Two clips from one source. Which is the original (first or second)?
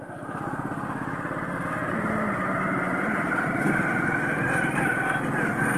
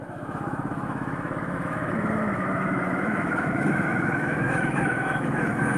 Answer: first